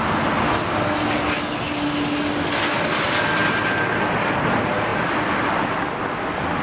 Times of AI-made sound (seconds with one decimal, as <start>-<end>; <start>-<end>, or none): none